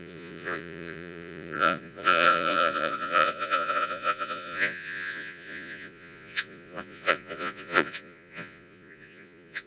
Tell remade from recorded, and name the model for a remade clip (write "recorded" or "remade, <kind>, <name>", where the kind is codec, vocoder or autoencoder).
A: remade, vocoder, Vocos